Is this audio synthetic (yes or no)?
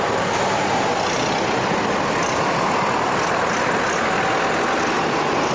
no